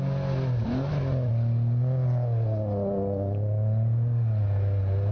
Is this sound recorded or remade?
recorded